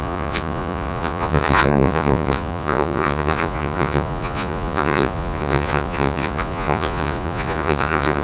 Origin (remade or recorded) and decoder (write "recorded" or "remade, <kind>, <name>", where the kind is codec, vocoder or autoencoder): remade, vocoder, Vocos